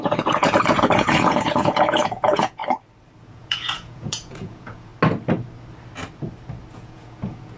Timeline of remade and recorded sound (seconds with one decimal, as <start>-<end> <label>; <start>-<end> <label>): 0.0-2.6 remade; 2.6-3.2 recorded; 3.2-4.9 remade; 4.9-6.7 recorded; 6.7-7.6 remade